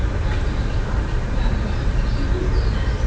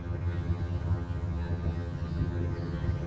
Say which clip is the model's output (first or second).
second